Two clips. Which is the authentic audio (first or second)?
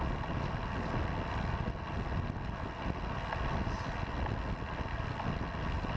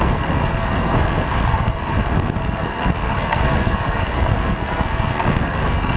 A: first